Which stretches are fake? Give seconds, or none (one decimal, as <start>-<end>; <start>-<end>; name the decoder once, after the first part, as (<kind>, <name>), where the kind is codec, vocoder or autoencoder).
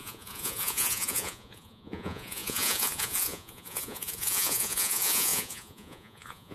0.0-6.5 (vocoder, Vocos)